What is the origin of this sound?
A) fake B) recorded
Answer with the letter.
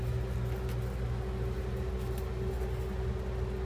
B